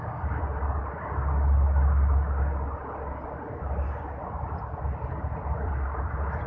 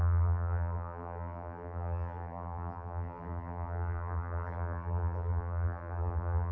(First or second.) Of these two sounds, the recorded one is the first